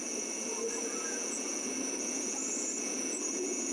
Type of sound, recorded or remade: remade